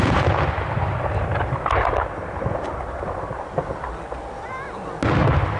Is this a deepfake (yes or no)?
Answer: no